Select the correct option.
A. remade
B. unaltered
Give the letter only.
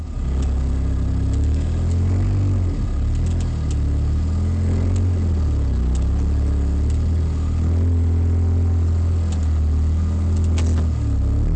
B